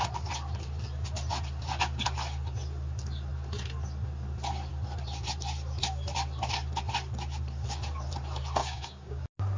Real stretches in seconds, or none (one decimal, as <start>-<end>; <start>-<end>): 0.0-8.6; 9.2-9.6